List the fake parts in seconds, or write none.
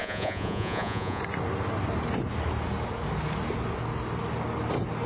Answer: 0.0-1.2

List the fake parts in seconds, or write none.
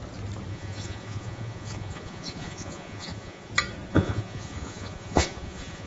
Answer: 0.5-3.5; 3.9-5.9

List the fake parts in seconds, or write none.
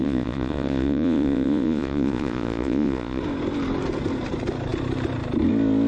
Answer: 0.0-3.2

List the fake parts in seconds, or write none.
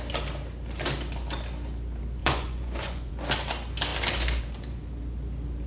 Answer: 2.2-3.1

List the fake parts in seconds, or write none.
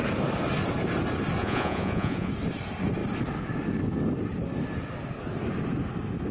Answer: 1.4-2.3